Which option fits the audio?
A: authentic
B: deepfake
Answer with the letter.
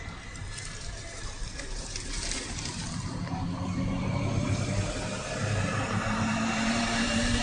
B